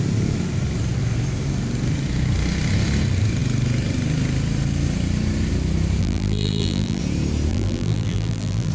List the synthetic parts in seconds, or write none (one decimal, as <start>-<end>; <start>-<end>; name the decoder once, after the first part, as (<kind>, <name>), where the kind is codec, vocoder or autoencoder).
6.0-7.0 (vocoder, BigVGAN v2); 7.5-8.7